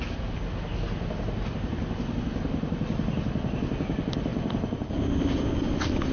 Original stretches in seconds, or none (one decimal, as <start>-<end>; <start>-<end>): 0.0-6.1